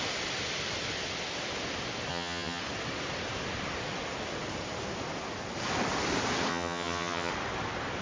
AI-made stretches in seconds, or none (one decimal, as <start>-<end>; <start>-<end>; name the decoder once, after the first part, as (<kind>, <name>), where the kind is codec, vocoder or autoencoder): 2.1-2.6 (vocoder, HiFi-GAN); 6.5-7.3